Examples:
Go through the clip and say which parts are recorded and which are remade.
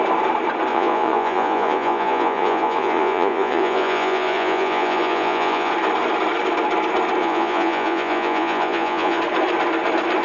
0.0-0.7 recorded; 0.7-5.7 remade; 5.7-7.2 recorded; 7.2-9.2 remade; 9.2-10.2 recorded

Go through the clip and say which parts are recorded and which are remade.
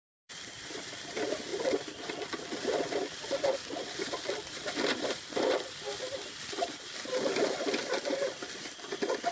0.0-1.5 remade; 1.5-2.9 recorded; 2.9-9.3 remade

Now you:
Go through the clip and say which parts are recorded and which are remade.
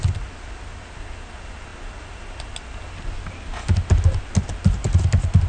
0.0-5.5 recorded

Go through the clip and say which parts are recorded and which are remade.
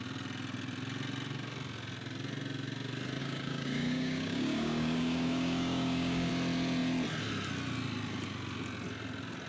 0.0-3.2 recorded; 3.2-6.3 remade; 6.3-9.5 recorded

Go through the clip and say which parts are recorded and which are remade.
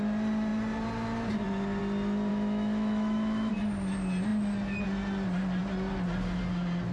0.0-2.3 recorded; 2.3-3.5 remade; 3.5-6.9 recorded